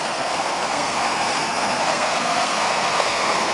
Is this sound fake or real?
fake